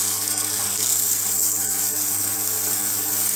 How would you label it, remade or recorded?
remade